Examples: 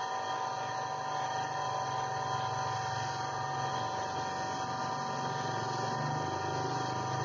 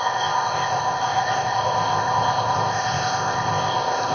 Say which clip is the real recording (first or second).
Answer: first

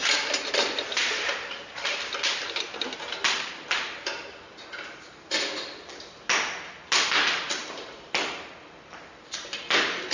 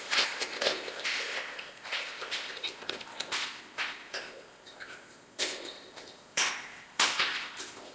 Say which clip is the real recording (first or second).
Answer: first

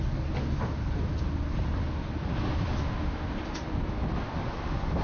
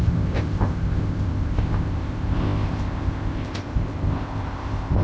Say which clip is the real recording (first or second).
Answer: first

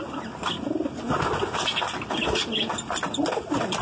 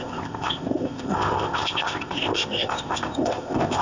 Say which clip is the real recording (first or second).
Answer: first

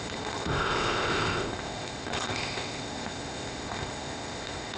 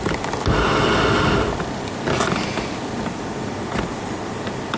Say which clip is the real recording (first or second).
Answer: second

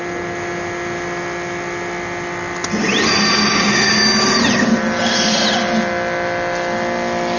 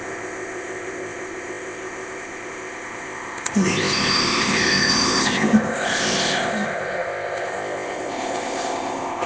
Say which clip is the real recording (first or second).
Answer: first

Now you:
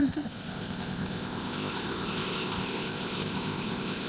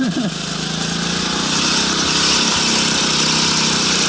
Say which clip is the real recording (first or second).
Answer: second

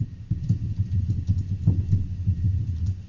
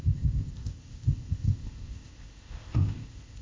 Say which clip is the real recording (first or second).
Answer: first